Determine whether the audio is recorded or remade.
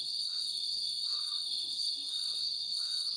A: remade